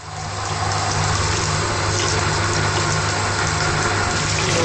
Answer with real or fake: real